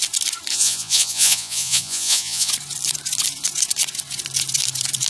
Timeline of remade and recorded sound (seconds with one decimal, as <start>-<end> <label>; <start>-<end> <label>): 0.0-0.5 recorded; 0.5-2.5 remade; 2.5-5.1 recorded